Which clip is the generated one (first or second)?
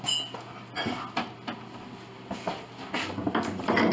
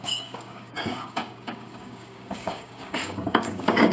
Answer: second